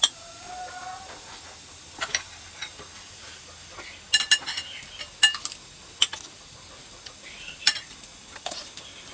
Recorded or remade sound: recorded